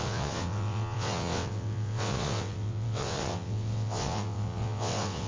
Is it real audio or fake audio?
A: fake